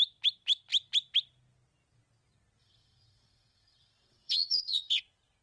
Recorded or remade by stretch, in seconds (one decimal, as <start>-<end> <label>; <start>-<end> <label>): 0.0-2.6 recorded; 2.6-5.0 remade; 5.0-5.4 recorded